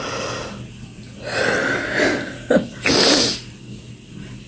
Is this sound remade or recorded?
recorded